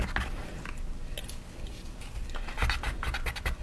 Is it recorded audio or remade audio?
recorded